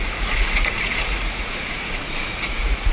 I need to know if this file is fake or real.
fake